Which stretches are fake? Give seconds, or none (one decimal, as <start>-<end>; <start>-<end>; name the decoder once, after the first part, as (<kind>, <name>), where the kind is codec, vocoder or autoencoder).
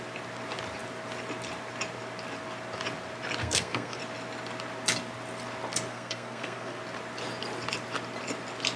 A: 3.4-4.0 (codec, SNAC); 5.9-6.8